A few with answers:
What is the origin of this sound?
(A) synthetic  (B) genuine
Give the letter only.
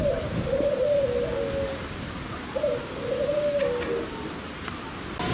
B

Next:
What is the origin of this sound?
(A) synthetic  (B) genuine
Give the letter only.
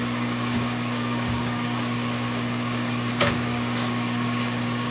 A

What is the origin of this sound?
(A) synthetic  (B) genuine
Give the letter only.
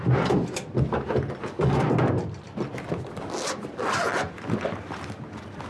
B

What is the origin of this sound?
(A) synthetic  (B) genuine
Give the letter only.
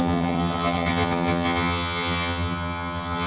A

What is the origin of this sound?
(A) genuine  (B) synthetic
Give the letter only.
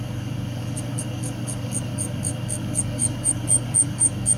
B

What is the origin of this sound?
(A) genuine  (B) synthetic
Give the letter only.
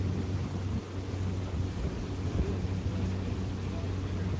A